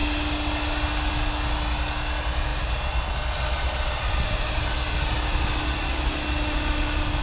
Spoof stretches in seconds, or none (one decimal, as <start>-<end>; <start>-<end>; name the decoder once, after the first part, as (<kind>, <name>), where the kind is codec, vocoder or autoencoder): none